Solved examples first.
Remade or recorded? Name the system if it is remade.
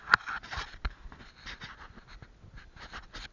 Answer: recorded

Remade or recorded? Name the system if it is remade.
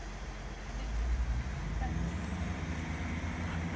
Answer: recorded